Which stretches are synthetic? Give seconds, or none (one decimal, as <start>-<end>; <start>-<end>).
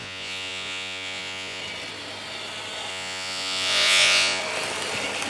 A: 0.0-1.6; 2.9-4.4